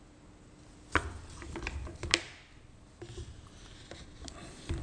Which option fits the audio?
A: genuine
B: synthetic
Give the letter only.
A